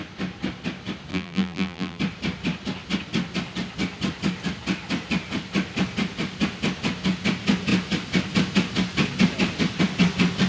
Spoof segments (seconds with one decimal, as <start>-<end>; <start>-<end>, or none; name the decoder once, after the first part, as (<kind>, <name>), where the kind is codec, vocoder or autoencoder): 1.1-2.0 (vocoder, BigVGAN v2)